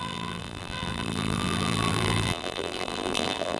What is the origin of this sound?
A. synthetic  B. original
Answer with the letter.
A